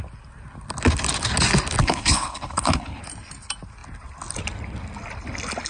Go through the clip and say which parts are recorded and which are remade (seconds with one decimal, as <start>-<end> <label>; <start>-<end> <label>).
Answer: 0.0-1.8 recorded; 1.8-3.0 remade; 3.0-5.7 recorded